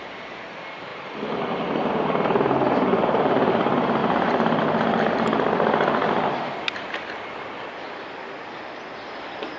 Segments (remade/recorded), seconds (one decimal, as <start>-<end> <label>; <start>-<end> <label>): 0.0-0.9 recorded; 0.9-3.5 remade; 3.5-4.0 recorded; 4.0-4.6 remade; 4.6-9.6 recorded